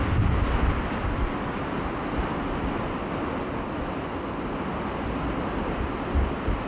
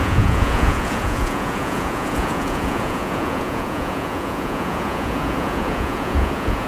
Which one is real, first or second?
first